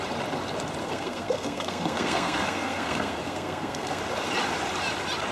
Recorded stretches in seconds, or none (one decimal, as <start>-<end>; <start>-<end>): 0.0-0.8; 4.0-5.3